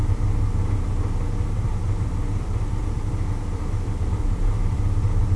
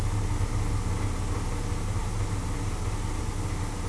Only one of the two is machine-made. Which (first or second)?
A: first